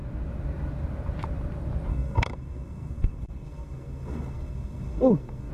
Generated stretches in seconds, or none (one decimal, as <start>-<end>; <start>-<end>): 1.9-5.5